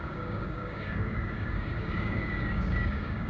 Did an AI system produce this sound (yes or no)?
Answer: yes